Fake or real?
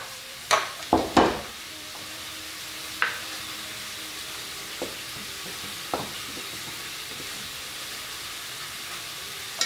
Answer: fake